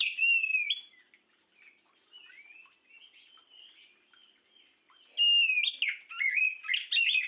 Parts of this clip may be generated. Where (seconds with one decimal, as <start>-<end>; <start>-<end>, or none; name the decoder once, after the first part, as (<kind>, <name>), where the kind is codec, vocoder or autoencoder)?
none